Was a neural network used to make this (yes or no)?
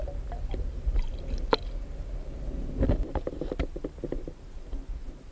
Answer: no